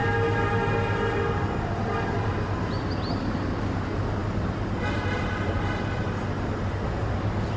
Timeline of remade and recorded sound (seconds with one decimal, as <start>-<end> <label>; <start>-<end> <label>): 0.0-7.6 recorded